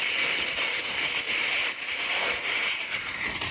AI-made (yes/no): yes